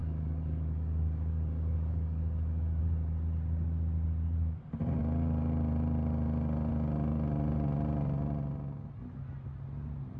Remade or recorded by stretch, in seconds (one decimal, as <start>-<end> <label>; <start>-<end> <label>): 0.0-2.8 remade; 2.8-10.2 recorded